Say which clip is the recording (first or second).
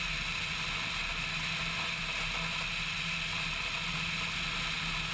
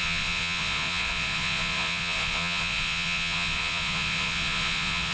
first